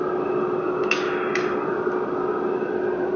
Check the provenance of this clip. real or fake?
real